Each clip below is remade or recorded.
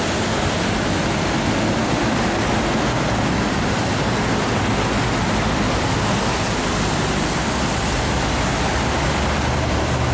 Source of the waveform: recorded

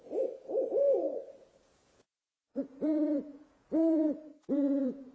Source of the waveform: remade